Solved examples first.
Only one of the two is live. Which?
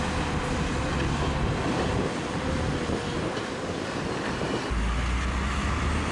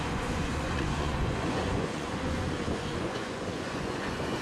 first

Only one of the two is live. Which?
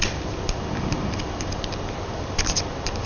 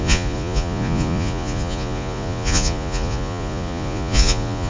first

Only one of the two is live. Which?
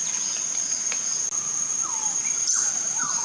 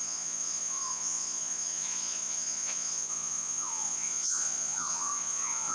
first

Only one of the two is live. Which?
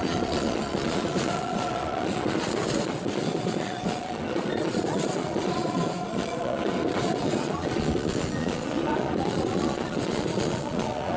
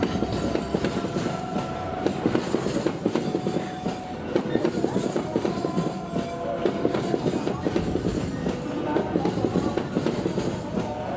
second